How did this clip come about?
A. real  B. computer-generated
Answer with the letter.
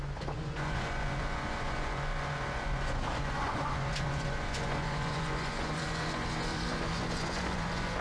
B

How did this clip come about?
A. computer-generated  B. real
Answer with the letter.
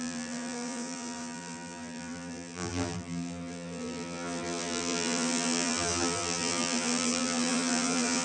A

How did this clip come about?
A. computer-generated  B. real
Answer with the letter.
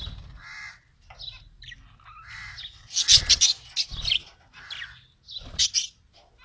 B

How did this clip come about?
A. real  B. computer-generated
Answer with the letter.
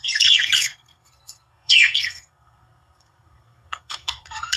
B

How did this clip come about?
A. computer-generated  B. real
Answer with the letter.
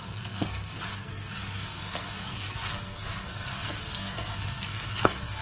A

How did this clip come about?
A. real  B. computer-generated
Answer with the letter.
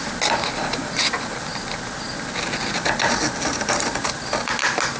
A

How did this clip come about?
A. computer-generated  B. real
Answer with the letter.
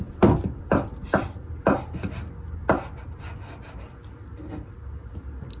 B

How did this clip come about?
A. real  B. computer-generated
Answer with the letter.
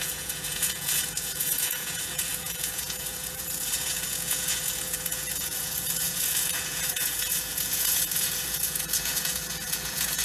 B